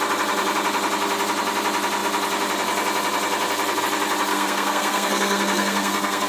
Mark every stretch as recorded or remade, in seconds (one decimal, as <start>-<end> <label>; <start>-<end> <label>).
0.0-4.3 recorded; 4.3-6.3 remade